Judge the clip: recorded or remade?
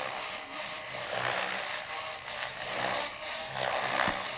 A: recorded